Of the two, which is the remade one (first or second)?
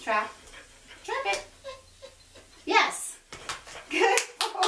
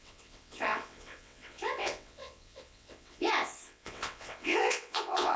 second